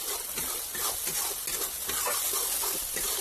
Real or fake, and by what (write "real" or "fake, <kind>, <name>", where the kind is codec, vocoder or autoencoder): real